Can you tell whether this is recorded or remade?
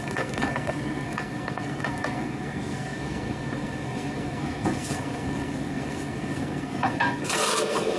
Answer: remade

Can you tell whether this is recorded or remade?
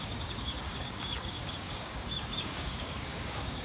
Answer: remade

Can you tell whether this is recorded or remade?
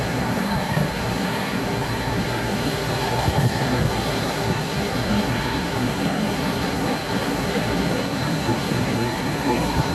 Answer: remade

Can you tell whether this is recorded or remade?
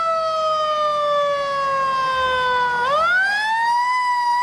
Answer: recorded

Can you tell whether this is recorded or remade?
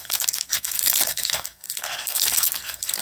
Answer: remade